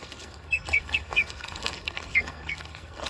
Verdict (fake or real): fake